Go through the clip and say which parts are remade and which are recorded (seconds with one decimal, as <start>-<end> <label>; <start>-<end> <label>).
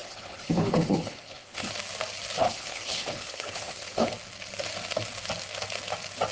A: 0.0-1.7 remade; 1.7-2.4 recorded; 2.4-4.1 remade; 4.1-6.3 recorded